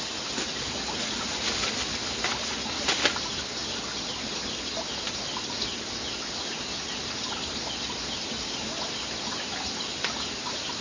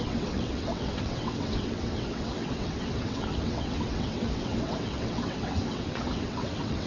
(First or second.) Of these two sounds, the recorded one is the first